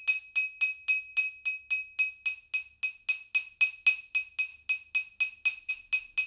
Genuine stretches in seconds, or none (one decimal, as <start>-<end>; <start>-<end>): 0.0-6.3